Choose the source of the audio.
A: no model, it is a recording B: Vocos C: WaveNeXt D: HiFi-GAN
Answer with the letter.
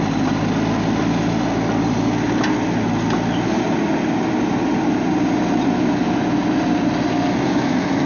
A